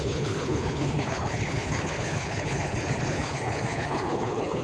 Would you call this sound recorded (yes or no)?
no